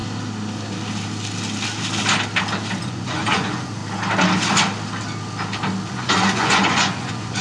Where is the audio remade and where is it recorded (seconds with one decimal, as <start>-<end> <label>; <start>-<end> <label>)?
0.0-2.8 recorded; 2.8-3.8 remade; 3.8-5.9 recorded; 5.9-7.4 remade